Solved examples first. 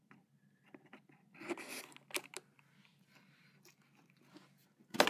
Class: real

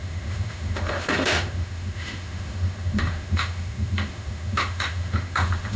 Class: fake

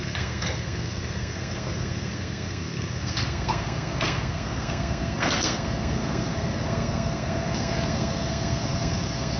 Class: fake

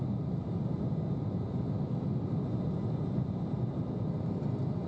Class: real